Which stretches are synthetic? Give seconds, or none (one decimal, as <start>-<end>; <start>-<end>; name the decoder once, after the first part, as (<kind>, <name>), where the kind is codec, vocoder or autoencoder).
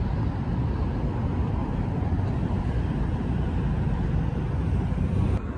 1.6-5.0 (vocoder, BigVGAN v2)